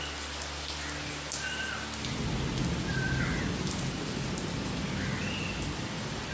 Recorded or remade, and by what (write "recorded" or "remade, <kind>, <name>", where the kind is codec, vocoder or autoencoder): recorded